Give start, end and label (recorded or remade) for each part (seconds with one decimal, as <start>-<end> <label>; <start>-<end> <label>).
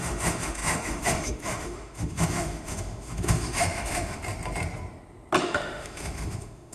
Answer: 0.0-4.2 remade; 4.2-5.4 recorded; 5.4-6.7 remade